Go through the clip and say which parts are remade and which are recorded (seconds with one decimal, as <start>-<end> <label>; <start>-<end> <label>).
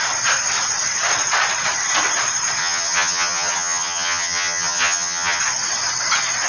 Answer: 0.0-2.6 recorded; 2.6-5.4 remade; 5.4-6.5 recorded